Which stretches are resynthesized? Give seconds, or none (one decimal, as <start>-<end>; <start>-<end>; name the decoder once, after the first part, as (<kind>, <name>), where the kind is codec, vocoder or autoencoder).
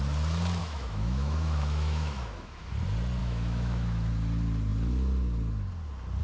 0.6-2.7 (autoencoder, DAC-VAE); 3.2-4.1